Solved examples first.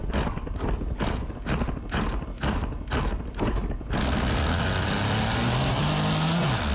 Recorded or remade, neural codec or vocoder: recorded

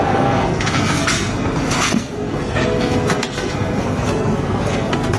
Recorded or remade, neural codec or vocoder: remade, codec, SNAC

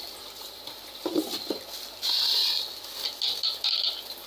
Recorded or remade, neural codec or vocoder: recorded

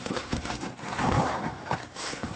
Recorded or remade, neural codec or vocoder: remade, codec, SNAC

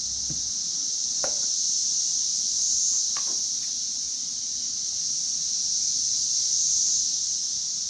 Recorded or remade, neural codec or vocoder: recorded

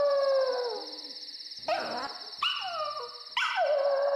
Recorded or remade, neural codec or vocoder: recorded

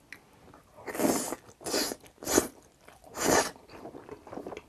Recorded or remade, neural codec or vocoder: recorded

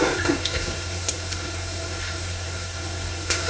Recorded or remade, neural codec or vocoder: remade, codec, SNAC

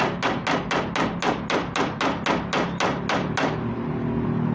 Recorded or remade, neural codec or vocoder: recorded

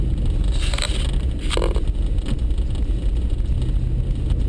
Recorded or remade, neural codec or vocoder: recorded